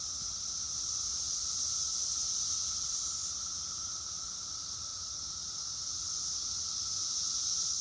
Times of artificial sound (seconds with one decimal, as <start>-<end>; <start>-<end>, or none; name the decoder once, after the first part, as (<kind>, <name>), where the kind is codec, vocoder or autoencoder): 1.0-3.1 (vocoder, BigVGAN v2); 4.9-5.6